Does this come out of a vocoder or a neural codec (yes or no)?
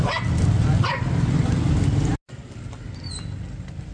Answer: no